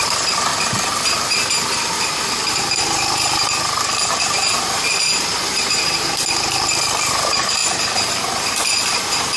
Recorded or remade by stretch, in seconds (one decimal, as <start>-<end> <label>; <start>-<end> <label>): 0.0-9.4 remade